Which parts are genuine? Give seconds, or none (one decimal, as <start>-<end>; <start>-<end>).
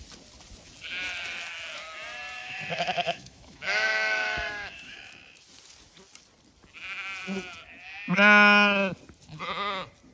0.0-2.4; 5.1-10.1